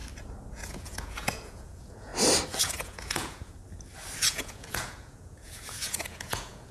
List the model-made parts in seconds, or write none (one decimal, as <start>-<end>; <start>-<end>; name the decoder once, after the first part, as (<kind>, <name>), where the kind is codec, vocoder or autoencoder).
0.5-2.1 (vocoder, Vocos); 2.6-3.6; 4.2-6.7